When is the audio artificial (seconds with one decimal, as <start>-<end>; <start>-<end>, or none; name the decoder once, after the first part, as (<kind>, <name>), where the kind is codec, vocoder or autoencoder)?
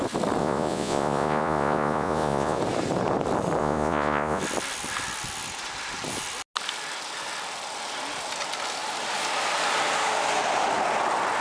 0.4-2.6 (vocoder, Vocos); 3.6-4.4